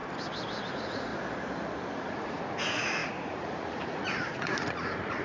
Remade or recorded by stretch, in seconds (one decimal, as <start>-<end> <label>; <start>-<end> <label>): 0.0-0.7 recorded; 0.7-1.1 remade; 1.1-1.9 recorded; 1.9-5.2 remade